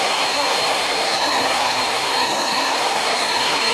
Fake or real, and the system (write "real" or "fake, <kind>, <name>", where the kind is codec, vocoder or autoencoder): fake, codec, SNAC